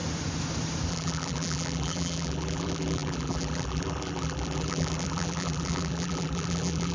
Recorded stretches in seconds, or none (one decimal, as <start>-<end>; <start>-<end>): 0.0-0.9